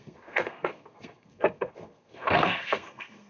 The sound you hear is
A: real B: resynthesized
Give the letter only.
B